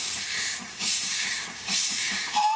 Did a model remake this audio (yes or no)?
yes